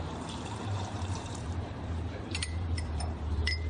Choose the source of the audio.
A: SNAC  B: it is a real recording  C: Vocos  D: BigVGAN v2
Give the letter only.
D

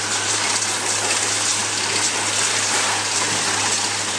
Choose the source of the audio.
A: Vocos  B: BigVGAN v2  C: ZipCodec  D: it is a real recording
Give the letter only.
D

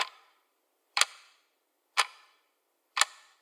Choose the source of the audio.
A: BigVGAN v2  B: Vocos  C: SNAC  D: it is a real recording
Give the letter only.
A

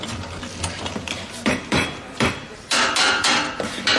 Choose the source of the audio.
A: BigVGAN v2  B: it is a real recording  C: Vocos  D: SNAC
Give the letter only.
A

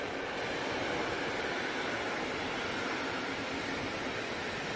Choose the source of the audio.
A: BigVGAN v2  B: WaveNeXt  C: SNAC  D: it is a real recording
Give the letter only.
A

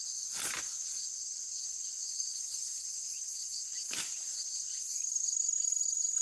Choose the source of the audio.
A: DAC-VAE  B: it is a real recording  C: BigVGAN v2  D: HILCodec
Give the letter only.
C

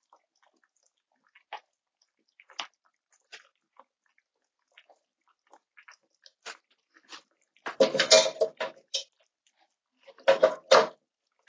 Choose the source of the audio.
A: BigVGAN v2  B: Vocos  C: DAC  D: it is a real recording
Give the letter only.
D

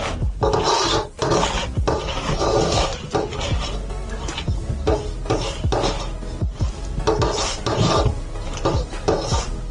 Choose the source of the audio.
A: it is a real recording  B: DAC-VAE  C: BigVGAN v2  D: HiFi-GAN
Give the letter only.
A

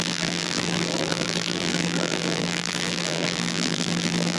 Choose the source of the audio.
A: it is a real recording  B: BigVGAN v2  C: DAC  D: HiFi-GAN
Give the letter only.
B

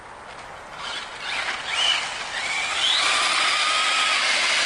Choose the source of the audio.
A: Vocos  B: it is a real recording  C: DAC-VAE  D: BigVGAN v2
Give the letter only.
B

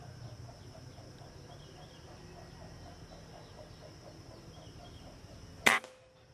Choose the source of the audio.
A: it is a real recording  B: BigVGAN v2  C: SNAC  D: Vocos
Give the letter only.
A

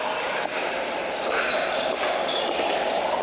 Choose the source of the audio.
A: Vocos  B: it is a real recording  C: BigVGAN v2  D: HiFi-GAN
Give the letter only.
B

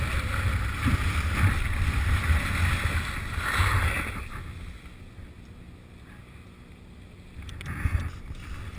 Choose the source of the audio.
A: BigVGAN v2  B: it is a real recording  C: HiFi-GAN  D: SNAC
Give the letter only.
B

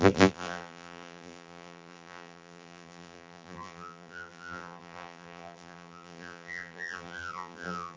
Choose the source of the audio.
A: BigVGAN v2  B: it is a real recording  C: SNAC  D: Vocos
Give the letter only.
A